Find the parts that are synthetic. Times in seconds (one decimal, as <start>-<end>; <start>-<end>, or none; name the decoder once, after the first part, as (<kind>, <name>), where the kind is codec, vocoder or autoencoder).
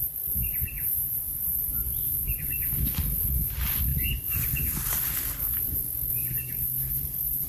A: none